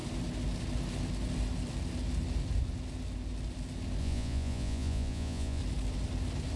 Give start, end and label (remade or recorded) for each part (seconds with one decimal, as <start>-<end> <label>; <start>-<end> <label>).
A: 0.0-4.0 recorded; 4.0-5.6 remade; 5.6-6.6 recorded